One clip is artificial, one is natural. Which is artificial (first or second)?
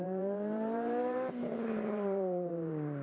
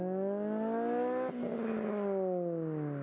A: first